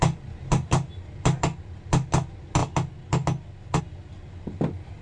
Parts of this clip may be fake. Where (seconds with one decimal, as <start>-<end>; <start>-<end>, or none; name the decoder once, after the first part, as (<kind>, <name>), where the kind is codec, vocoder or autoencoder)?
none